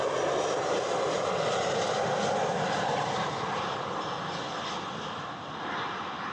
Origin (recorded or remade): recorded